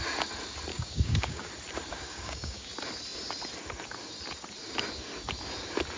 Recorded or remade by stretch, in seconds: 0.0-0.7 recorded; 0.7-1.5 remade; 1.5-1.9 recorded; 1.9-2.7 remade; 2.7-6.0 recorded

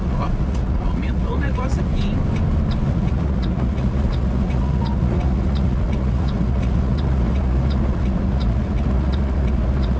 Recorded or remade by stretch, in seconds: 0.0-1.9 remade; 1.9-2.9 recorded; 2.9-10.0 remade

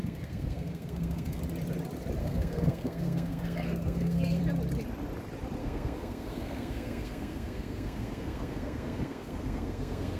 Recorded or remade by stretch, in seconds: 0.0-1.4 remade; 1.4-2.2 recorded; 2.2-4.4 remade; 4.4-5.6 recorded; 5.6-10.2 remade

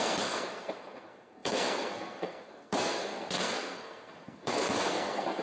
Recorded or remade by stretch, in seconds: 0.0-5.4 remade

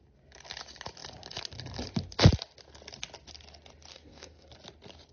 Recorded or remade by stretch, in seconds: 0.0-3.9 recorded; 3.9-4.5 remade; 4.5-5.1 recorded